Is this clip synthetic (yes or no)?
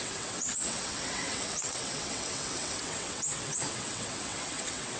yes